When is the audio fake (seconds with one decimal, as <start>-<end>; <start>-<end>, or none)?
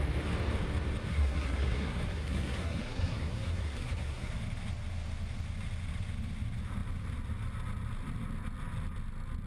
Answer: 1.1-4.3